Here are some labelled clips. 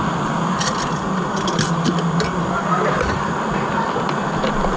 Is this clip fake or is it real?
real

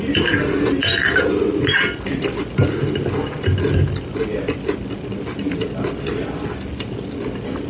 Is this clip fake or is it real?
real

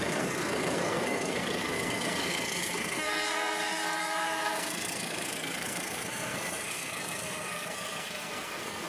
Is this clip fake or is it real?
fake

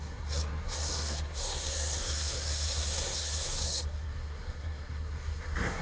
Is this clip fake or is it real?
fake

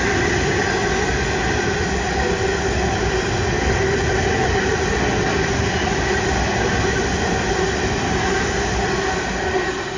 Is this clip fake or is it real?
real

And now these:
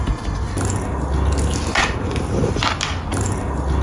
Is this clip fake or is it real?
real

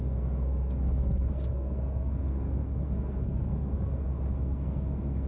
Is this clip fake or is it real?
fake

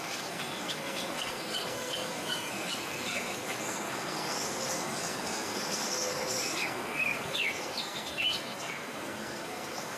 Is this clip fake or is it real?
fake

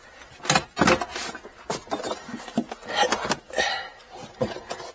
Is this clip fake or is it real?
real